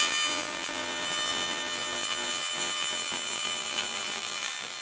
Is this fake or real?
fake